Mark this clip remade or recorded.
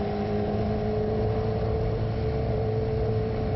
recorded